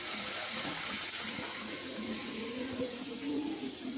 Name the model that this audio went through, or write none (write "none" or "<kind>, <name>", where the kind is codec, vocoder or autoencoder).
vocoder, Vocos